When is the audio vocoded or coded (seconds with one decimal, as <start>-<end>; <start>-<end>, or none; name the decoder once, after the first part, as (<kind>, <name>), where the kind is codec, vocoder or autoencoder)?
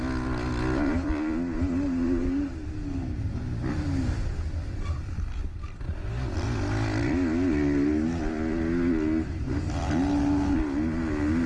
none